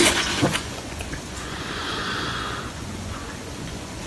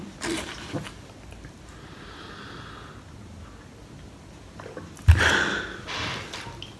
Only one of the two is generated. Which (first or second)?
first